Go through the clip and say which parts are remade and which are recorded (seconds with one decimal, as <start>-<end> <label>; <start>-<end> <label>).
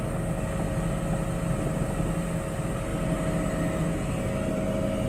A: 0.0-5.1 recorded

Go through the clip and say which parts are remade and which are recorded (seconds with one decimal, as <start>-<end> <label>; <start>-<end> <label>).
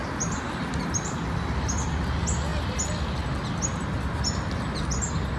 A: 0.0-5.4 recorded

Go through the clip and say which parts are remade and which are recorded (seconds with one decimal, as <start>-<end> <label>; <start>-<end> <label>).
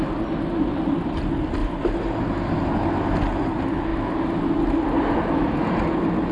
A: 0.0-1.6 recorded; 1.6-2.2 remade; 2.2-6.3 recorded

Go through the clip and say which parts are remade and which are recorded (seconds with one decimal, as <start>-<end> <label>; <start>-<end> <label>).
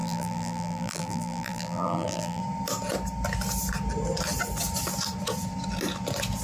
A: 0.0-2.4 remade; 2.4-6.4 recorded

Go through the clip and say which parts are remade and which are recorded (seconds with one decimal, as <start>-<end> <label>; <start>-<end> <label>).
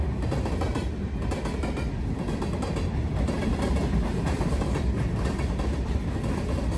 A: 0.0-3.0 recorded; 3.0-5.1 remade; 5.1-6.8 recorded